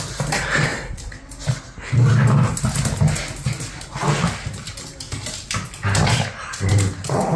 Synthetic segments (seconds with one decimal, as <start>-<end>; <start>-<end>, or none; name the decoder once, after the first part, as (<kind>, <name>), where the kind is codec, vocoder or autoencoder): none